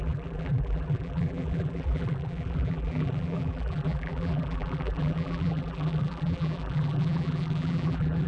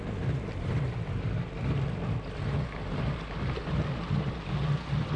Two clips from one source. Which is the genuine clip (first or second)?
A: second